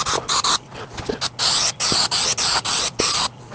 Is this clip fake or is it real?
real